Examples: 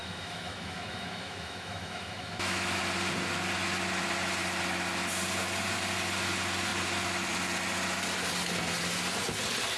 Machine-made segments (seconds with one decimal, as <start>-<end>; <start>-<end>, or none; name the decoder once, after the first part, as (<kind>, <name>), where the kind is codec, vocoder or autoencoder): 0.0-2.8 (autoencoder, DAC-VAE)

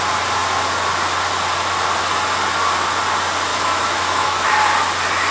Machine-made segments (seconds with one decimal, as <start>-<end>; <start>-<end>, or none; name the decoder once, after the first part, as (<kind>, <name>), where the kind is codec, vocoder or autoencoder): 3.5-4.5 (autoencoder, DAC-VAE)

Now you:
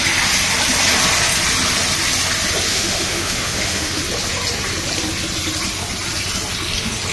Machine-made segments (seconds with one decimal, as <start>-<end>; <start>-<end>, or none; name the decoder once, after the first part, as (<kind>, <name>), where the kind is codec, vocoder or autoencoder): 2.7-4.0 (autoencoder, DAC-VAE)

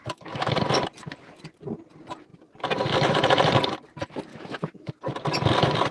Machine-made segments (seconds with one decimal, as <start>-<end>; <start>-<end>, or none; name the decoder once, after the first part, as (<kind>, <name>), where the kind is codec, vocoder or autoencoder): 0.0-0.5 (autoencoder, DAC-VAE); 4.3-4.9

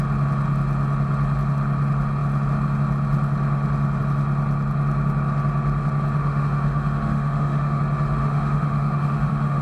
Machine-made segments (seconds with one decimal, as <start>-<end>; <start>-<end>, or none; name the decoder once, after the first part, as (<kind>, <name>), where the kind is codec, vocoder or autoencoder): 6.2-7.8 (autoencoder, DAC-VAE); 8.2-9.6

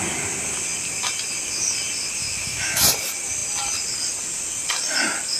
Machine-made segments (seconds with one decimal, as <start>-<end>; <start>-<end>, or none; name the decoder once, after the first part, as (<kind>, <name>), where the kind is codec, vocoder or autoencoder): 2.2-2.8 (autoencoder, DAC-VAE)

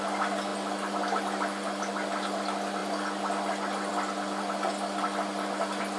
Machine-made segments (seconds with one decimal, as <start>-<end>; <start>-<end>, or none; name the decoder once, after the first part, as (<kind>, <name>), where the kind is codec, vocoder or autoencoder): none

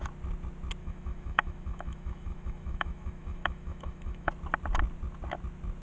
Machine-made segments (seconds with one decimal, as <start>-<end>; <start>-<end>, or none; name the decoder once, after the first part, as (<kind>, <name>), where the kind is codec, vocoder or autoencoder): 0.8-4.3 (autoencoder, DAC-VAE)